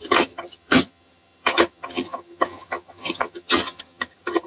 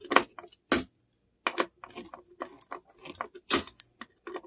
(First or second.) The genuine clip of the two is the second